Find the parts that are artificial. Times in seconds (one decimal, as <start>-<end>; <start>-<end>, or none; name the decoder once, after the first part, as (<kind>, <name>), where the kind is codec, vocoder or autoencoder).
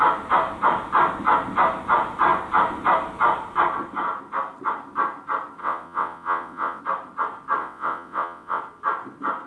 5.6-6.8 (vocoder, WaveNeXt); 7.6-8.6